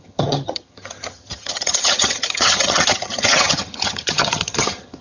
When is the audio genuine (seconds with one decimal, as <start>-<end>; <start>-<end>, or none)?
none